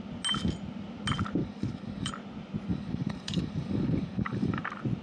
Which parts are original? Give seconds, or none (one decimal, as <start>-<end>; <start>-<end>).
0.0-1.4; 2.1-2.7; 4.6-5.0